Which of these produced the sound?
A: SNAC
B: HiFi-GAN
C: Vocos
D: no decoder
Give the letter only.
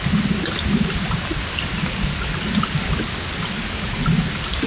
D